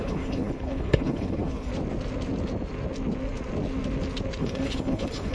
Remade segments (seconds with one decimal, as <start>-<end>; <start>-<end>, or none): 0.0-1.7; 4.4-5.3